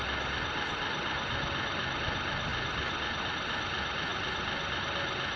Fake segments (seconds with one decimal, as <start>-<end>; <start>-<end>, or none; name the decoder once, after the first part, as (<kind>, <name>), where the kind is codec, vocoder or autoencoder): none